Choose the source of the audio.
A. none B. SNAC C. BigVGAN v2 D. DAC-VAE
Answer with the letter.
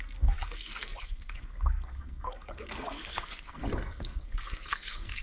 B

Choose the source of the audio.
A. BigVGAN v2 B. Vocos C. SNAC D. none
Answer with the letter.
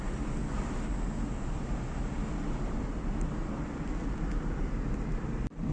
D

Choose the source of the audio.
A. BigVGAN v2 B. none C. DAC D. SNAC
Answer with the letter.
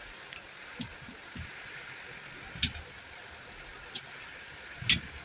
B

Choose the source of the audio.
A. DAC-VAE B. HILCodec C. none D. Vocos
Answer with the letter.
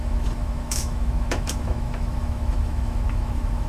A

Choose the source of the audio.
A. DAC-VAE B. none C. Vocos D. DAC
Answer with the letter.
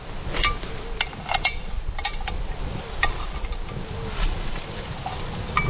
B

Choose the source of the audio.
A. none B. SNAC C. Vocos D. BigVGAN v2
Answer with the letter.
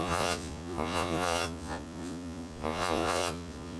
C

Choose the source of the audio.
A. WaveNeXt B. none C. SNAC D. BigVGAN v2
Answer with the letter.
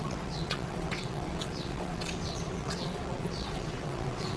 A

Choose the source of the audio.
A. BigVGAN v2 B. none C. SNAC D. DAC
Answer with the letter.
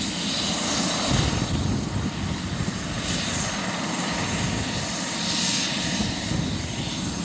B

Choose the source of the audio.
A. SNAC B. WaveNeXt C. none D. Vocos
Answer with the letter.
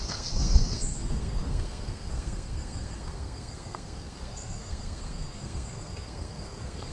A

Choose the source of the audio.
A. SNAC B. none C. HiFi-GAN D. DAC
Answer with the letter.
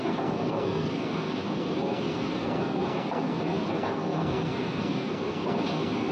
A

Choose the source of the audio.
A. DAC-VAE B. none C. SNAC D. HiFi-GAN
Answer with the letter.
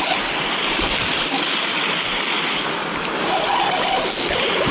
B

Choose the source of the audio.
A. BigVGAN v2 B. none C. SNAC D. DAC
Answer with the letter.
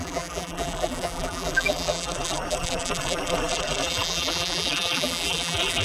A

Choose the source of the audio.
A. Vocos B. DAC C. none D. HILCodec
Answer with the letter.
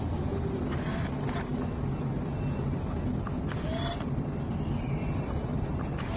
C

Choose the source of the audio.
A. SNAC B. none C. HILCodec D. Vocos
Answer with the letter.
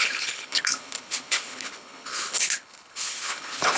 C